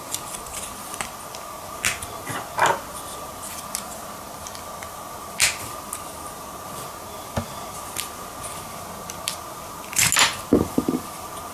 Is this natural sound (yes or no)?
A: yes